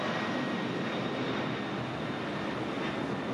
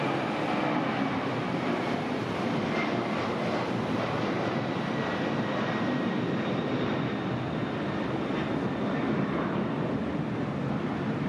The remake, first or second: second